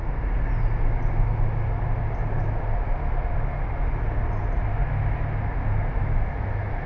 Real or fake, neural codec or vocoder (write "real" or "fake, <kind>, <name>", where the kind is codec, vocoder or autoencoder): real